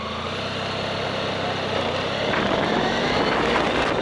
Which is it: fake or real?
real